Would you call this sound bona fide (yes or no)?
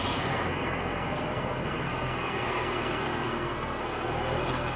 no